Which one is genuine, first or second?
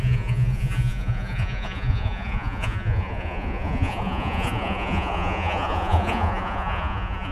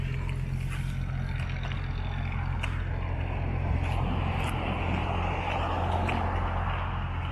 second